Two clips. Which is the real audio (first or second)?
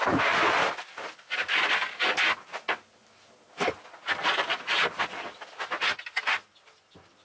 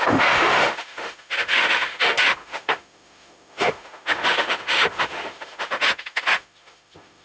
first